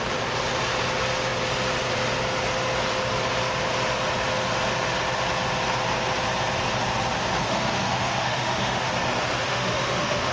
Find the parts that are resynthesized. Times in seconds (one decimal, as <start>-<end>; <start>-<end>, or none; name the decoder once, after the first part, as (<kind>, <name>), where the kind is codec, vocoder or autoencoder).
7.4-8.9 (autoencoder, DAC-VAE); 9.4-10.3